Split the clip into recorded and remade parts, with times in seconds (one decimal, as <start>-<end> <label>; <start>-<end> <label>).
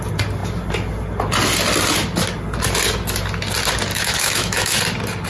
0.0-3.9 recorded; 3.9-4.8 remade; 4.8-5.3 recorded